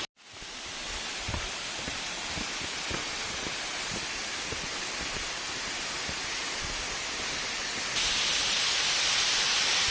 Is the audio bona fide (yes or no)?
yes